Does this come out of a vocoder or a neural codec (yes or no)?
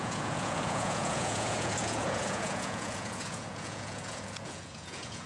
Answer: yes